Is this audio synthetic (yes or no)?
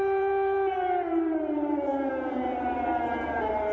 yes